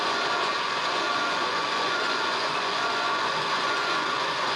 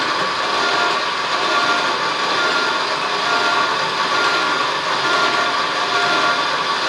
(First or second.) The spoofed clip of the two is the first